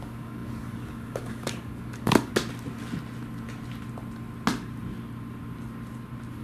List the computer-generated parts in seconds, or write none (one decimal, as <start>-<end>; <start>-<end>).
0.0-2.3